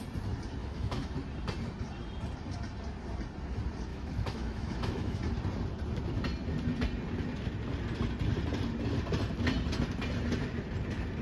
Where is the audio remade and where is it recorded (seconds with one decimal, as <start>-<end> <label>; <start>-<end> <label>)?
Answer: 0.0-0.6 recorded; 0.6-1.1 remade; 1.1-3.9 recorded; 3.9-5.2 remade; 5.2-11.2 recorded